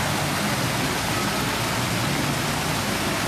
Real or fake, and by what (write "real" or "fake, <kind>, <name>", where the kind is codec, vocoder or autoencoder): real